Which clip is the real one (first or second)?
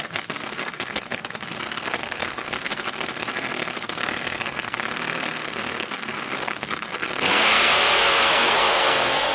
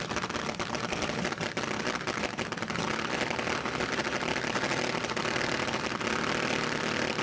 second